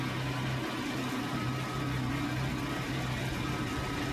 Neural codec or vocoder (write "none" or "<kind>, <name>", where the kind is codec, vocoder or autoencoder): none